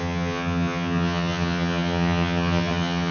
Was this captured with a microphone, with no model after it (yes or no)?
no